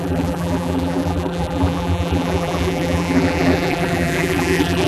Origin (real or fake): fake